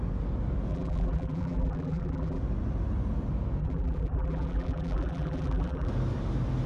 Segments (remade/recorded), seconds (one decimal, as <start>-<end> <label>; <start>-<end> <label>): 0.0-0.7 recorded; 0.7-2.4 remade; 2.4-3.6 recorded; 3.6-5.9 remade; 5.9-6.7 recorded